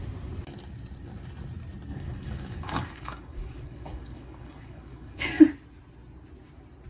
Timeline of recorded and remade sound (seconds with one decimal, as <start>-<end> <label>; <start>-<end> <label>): 0.0-1.9 recorded; 1.9-5.4 remade; 5.4-6.9 recorded